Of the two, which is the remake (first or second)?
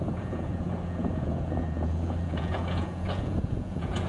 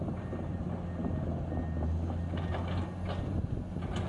first